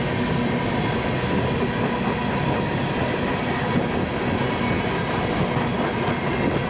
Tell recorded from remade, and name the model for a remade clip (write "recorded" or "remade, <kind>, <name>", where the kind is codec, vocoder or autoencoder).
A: recorded